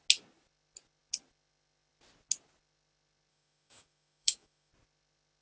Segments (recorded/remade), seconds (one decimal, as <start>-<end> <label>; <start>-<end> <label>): 0.0-3.3 recorded; 3.3-4.7 remade; 4.7-5.4 recorded

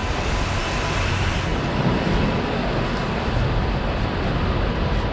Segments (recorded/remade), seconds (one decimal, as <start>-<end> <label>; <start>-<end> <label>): 0.0-0.6 remade; 0.6-1.5 recorded; 1.5-4.4 remade; 4.4-5.1 recorded

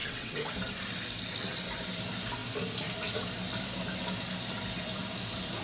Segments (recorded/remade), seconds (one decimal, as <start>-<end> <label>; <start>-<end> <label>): 0.0-0.5 remade; 0.5-5.6 recorded

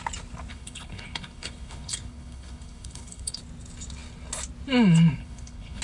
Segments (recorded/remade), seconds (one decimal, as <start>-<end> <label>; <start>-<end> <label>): 0.0-0.5 recorded; 0.5-3.4 remade; 3.4-5.2 recorded; 5.2-5.8 remade

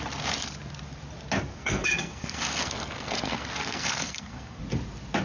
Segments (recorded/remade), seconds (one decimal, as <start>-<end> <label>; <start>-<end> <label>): 0.0-1.5 recorded; 1.5-4.6 remade; 4.6-5.2 recorded

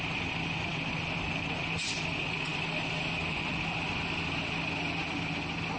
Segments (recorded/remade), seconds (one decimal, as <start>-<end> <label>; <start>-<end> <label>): 0.0-5.8 recorded

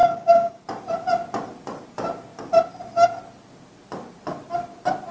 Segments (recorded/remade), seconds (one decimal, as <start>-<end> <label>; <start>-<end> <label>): 0.0-0.6 remade; 0.6-5.1 recorded

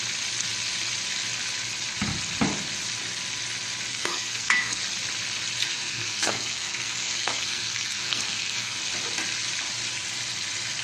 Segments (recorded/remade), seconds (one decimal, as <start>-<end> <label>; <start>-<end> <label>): 0.0-3.9 recorded; 3.9-4.8 remade; 4.8-5.6 recorded; 5.6-8.8 remade; 8.8-10.8 recorded